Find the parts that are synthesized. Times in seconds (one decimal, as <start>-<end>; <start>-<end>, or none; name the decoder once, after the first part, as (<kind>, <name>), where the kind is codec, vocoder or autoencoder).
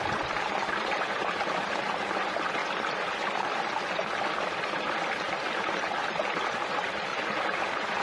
0.0-2.6 (vocoder, BigVGAN v2); 4.6-8.0